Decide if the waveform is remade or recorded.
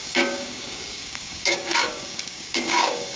remade